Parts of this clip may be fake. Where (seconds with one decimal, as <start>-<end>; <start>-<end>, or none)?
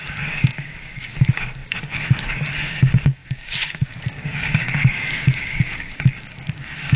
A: 0.0-7.0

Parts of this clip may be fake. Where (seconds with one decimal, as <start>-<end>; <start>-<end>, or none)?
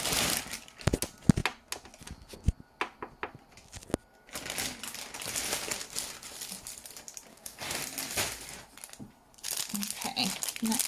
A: 7.3-7.8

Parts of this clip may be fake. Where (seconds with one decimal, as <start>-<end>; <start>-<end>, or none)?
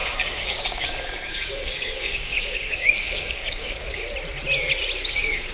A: 0.0-4.0; 5.1-5.5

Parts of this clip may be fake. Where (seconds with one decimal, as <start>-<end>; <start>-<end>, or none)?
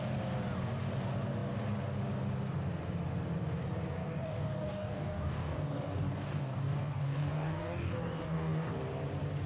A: 4.0-8.7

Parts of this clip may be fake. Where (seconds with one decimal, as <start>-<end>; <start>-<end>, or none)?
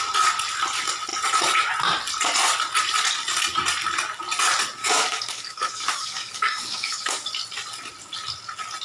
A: 4.8-7.3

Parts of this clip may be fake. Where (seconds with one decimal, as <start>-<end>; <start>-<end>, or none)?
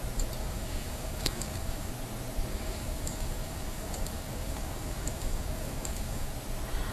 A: 0.4-1.9; 2.5-6.3